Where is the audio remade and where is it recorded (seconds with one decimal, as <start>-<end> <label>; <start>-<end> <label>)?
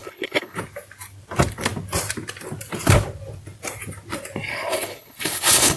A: 0.0-0.6 remade; 0.6-4.5 recorded; 4.5-5.8 remade